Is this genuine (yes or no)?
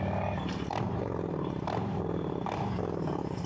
no